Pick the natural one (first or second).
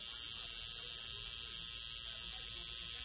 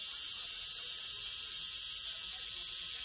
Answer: first